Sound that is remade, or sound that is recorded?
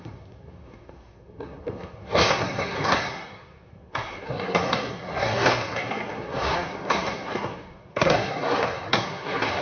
remade